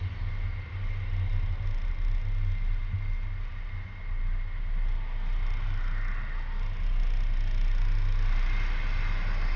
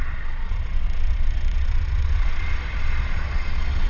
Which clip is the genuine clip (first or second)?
first